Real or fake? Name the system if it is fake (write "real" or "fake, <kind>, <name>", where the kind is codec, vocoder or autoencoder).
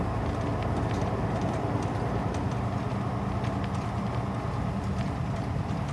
real